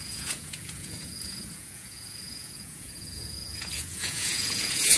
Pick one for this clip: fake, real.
fake